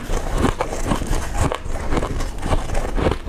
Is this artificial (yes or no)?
no